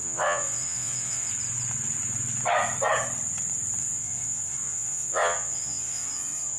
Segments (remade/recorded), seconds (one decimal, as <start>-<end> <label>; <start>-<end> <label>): 0.0-1.3 remade; 1.3-3.8 recorded; 3.8-6.6 remade

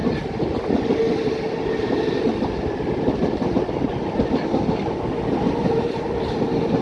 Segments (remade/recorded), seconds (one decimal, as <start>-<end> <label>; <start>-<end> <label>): 0.0-5.6 recorded; 5.6-6.2 remade; 6.2-6.8 recorded

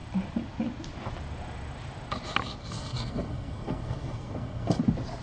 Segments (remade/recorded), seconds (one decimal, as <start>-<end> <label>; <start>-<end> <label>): 0.0-2.6 recorded; 2.6-4.8 remade; 4.8-5.2 recorded

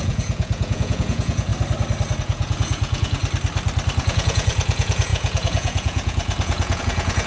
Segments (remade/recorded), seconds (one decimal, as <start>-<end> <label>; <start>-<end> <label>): 0.0-1.5 remade; 1.5-2.2 recorded; 2.2-3.2 remade; 3.2-4.0 recorded; 4.0-7.3 remade

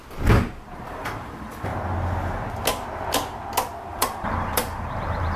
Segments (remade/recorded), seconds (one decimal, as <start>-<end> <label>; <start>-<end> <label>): 0.0-0.9 recorded; 0.9-1.7 remade; 1.7-3.8 recorded; 3.8-5.4 remade

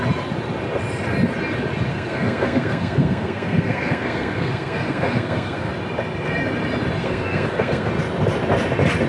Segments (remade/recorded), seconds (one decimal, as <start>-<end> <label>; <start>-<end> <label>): 0.0-1.9 recorded; 1.9-5.7 remade; 5.7-7.0 recorded; 7.0-7.9 remade; 7.9-9.1 recorded